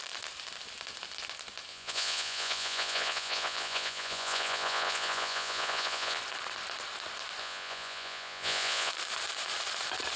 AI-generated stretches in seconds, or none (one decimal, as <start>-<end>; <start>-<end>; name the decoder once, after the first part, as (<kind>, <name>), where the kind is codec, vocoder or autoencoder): 1.7-6.2 (vocoder, Vocos); 7.4-8.9